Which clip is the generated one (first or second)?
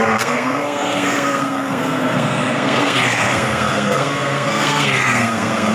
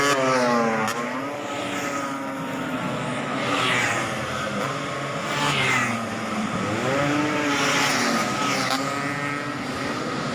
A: first